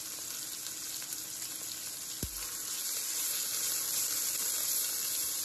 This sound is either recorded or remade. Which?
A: recorded